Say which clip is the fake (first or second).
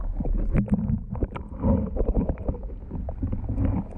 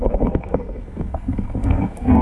second